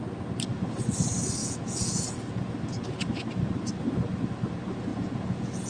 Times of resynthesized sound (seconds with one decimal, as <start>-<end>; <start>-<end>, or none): 1.4-2.5; 4.9-5.7